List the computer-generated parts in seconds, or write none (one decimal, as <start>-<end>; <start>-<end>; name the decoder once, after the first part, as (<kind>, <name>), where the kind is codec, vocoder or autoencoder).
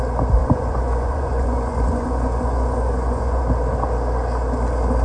0.4-3.4 (vocoder, Vocos)